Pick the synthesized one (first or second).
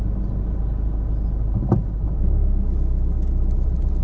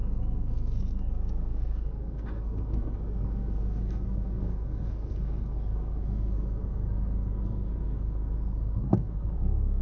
second